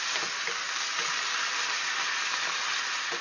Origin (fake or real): real